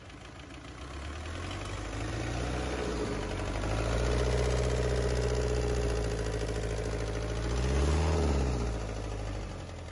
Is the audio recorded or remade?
recorded